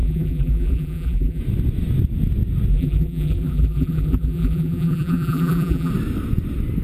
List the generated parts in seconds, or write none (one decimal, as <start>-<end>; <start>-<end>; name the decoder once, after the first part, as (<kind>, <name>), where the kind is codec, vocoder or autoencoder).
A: 0.0-1.4 (vocoder, BigVGAN v2); 2.7-5.9

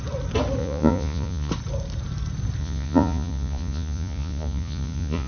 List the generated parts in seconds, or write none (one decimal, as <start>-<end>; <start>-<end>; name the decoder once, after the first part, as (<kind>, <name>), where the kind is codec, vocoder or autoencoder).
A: 0.6-1.5 (vocoder, Vocos); 2.6-5.3

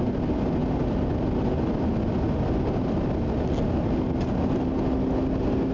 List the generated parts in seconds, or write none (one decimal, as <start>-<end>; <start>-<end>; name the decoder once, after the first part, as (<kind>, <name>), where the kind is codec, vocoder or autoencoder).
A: none

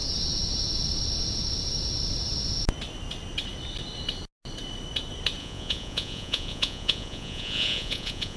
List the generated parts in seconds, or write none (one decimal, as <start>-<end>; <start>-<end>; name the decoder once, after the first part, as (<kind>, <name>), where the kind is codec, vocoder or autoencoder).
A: 5.4-8.4 (vocoder, Vocos)

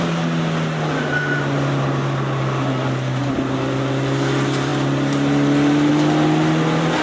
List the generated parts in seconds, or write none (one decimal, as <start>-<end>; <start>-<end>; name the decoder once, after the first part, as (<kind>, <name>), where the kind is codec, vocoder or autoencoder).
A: 4.7-5.9 (vocoder, BigVGAN v2)

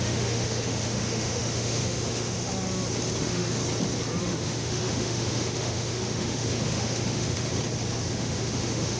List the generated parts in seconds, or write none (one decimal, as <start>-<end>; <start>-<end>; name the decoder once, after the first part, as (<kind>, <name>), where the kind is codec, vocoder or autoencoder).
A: 0.0-2.5 (autoencoder, DAC-VAE); 3.2-3.6; 4.2-7.5; 8.1-9.0